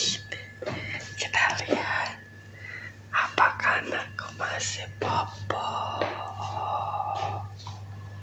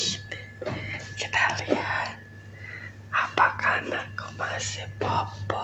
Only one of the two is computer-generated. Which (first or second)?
first